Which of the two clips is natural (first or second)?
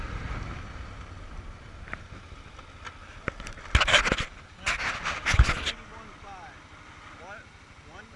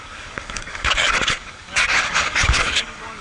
first